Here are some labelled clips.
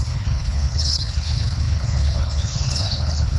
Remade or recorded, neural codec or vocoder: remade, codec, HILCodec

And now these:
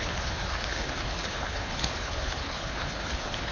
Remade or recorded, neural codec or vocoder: remade, codec, HILCodec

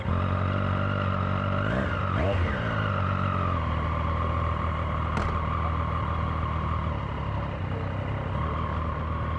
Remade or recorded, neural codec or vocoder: recorded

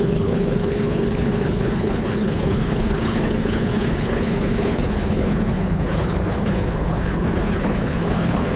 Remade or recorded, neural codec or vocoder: remade, codec, HILCodec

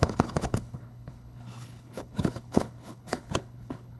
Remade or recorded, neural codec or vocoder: remade, codec, HILCodec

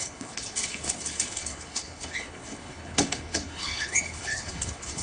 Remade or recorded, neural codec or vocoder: remade, codec, HILCodec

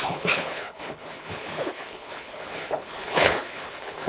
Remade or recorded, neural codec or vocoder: remade, codec, HILCodec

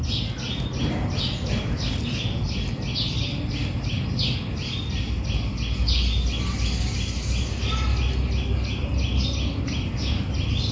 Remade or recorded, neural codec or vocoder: recorded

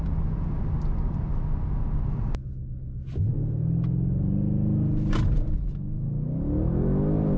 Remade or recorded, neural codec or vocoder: recorded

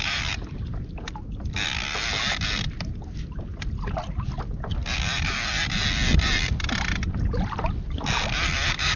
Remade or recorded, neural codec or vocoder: recorded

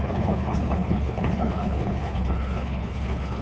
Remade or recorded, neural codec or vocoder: remade, codec, HILCodec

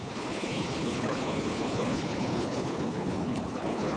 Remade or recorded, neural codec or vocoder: remade, codec, HILCodec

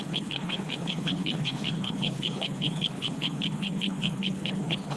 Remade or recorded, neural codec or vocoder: remade, codec, HILCodec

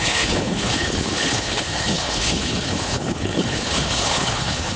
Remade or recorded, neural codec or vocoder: remade, codec, HILCodec